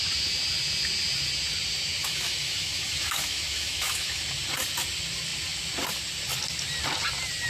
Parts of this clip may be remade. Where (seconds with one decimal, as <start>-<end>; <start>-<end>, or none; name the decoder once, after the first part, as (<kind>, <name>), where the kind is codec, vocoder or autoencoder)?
2.0-4.2 (autoencoder, DAC-VAE)